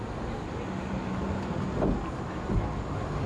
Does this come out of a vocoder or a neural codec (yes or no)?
no